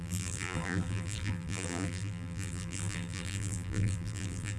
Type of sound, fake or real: fake